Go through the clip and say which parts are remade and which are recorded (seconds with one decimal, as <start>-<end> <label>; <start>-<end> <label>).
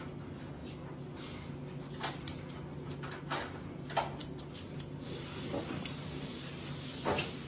0.0-4.2 recorded; 4.2-6.5 remade; 6.5-7.5 recorded